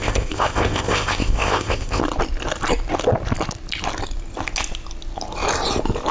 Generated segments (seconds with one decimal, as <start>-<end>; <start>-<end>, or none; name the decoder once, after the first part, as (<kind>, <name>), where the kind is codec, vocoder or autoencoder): 0.0-2.0 (codec, ZipCodec)